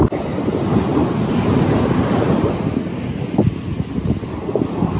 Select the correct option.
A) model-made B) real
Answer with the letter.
B